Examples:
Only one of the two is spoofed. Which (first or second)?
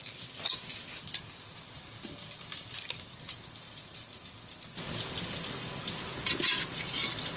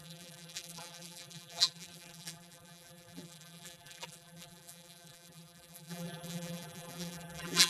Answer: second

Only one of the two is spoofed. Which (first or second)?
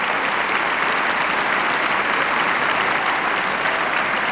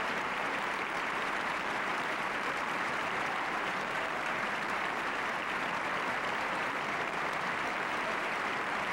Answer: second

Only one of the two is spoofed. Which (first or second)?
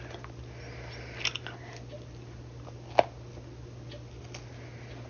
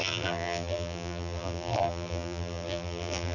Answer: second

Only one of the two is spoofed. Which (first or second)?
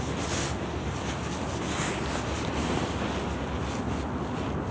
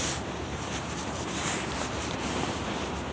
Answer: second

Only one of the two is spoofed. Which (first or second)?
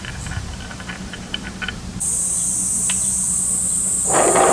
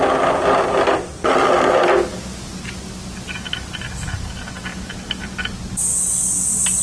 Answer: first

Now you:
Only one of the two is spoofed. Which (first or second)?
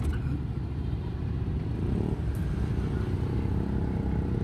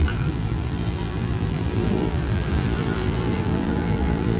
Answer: second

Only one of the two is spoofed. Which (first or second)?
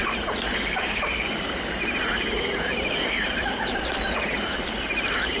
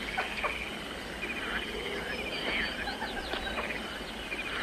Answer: first